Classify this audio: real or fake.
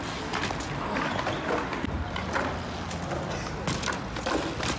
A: real